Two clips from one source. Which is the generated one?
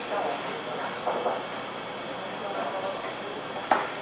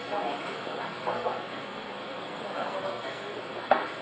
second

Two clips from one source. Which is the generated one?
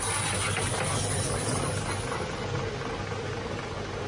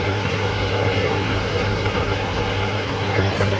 second